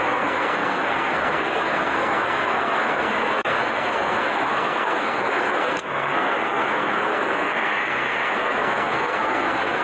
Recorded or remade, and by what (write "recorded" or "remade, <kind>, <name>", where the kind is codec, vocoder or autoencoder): remade, codec, SNAC